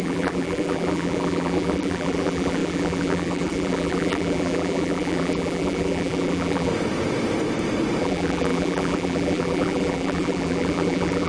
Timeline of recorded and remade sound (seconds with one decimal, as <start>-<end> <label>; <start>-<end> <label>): 0.0-6.7 remade; 6.7-8.0 recorded; 8.0-11.3 remade